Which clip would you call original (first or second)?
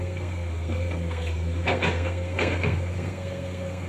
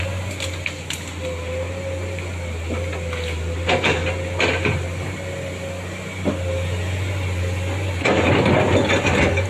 second